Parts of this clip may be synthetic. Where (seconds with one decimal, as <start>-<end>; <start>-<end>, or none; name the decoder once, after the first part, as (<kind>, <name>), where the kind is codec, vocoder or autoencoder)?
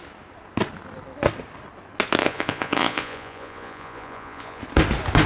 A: 2.2-4.6 (vocoder, Vocos)